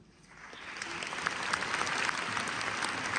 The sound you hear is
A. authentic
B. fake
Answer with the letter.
A